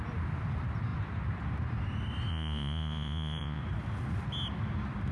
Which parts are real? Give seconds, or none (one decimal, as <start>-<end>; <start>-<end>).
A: 0.0-2.3; 3.6-5.1